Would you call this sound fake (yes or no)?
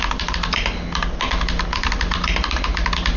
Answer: no